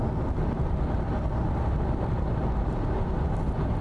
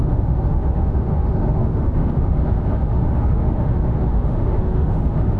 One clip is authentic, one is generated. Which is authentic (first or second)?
first